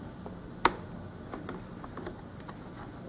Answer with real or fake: real